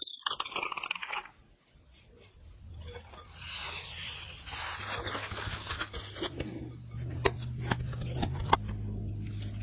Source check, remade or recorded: recorded